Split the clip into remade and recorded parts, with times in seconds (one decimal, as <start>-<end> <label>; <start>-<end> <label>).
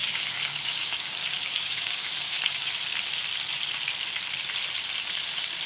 0.0-2.7 remade; 2.7-5.7 recorded